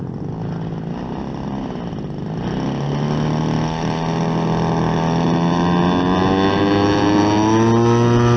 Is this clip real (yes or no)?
yes